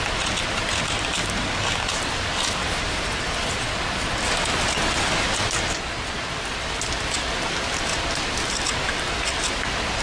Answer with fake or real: real